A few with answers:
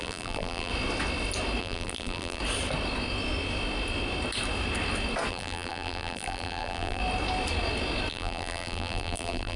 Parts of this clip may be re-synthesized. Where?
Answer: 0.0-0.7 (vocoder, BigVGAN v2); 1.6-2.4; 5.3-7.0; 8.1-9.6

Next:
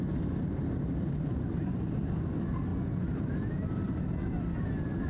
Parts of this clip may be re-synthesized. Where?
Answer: 2.7-5.1 (vocoder, BigVGAN v2)

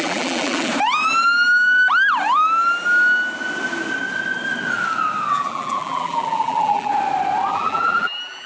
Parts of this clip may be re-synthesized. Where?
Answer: 0.0-0.7 (vocoder, BigVGAN v2); 5.3-6.9; 7.5-8.5

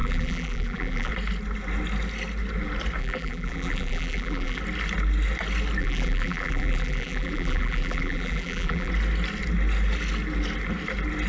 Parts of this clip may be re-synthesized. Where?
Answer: 0.0-1.1 (vocoder, BigVGAN v2); 3.0-4.6; 5.8-8.9

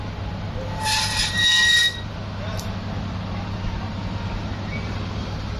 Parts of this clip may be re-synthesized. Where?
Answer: none

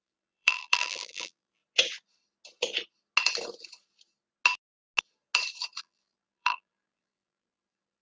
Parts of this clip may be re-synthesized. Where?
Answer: 0.0-1.6 (vocoder, BigVGAN v2); 5.8-8.0

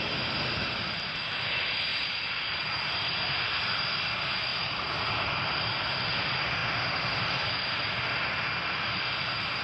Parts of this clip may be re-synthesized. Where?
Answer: 0.6-1.5 (vocoder, BigVGAN v2); 1.9-3.1; 4.5-5.5